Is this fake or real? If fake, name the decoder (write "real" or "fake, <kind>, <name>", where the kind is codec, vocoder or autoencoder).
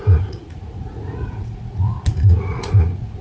fake, vocoder, Vocos